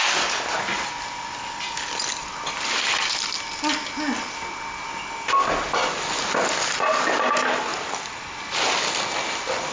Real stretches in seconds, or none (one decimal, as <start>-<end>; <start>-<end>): 0.0-9.7